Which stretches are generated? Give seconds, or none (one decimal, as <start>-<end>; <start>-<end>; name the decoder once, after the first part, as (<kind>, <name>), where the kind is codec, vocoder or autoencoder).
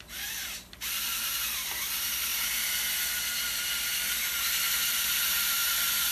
0.0-2.3 (vocoder, BigVGAN v2); 4.7-6.1